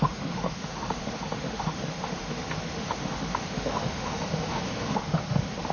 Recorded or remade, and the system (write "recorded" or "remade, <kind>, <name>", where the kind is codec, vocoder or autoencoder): remade, autoencoder, DAC-VAE